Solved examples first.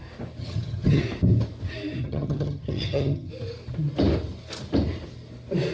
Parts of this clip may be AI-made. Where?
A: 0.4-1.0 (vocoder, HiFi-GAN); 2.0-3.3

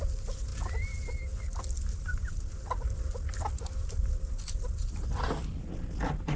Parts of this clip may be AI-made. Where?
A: none

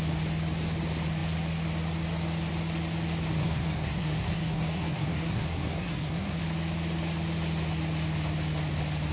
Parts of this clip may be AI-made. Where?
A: 3.4-6.4 (codec, SNAC)

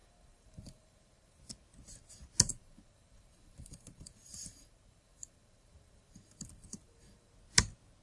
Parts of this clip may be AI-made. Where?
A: 0.0-1.4 (vocoder, BigVGAN v2); 2.5-7.3

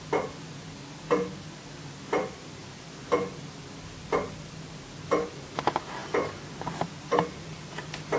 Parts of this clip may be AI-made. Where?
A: 6.0-6.9 (vocoder, BigVGAN v2)